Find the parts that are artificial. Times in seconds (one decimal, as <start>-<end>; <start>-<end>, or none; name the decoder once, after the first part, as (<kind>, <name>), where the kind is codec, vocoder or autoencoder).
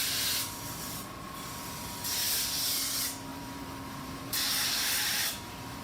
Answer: 3.3-5.8 (vocoder, BigVGAN v2)